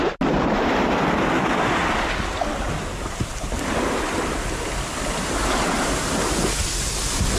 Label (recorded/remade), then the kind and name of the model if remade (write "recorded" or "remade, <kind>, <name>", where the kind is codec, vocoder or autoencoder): recorded